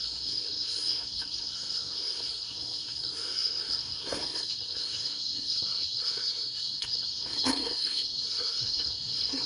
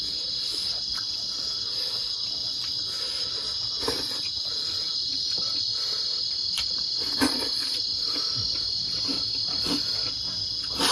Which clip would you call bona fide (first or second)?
second